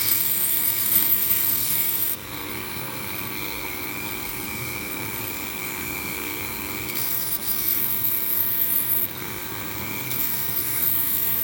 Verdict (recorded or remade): remade